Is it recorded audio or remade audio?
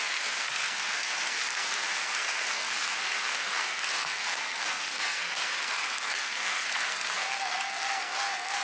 remade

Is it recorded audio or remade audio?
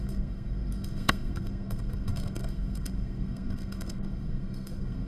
remade